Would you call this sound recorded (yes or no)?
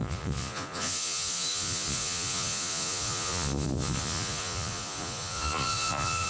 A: no